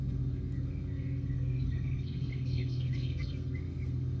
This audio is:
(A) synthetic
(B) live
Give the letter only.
A